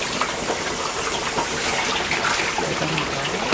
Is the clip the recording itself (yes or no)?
yes